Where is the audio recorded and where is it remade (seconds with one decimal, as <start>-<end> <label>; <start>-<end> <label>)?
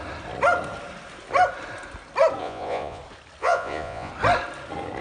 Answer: 0.0-2.4 recorded; 2.4-3.0 remade; 3.0-3.4 recorded; 3.4-4.1 remade; 4.1-5.0 recorded